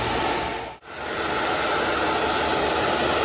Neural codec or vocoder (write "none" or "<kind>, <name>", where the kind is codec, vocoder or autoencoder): none